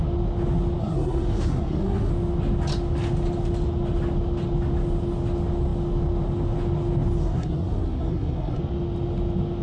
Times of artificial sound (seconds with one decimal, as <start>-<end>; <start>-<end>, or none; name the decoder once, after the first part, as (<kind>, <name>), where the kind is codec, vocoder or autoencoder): 0.8-2.1 (codec, SNAC); 7.2-8.6